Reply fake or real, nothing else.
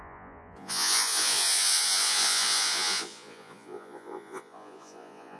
fake